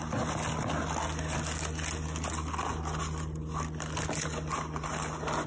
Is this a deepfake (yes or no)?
no